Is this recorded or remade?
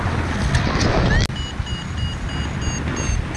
recorded